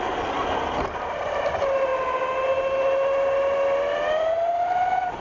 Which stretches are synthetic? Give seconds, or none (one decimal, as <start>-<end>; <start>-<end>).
none